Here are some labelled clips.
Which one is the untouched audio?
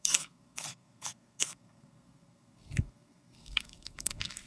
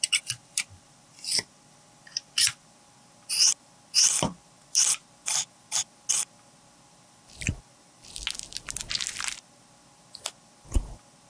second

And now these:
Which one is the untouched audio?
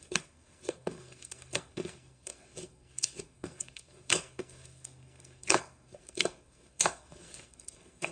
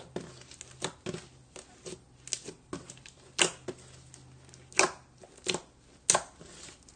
second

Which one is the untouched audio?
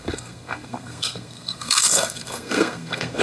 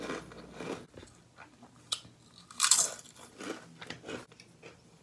second